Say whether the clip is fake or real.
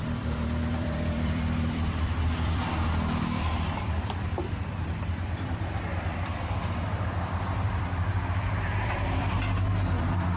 fake